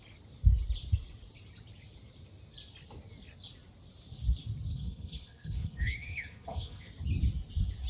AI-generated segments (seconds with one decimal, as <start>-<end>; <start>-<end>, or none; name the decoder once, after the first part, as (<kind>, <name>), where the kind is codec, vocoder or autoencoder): 4.7-6.9 (codec, HILCodec)